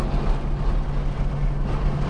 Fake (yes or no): no